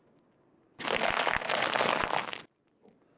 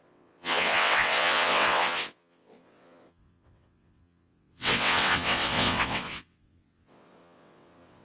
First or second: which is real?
first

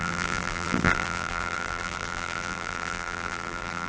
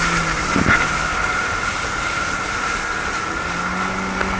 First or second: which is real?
second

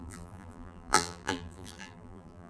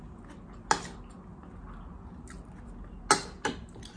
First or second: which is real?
second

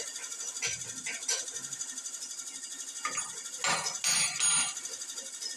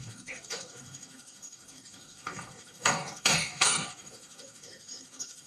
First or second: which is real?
first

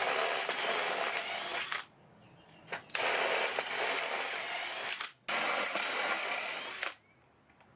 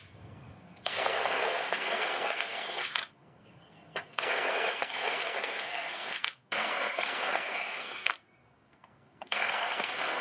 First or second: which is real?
first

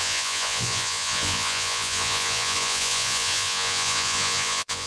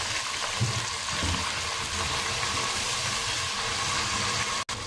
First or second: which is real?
second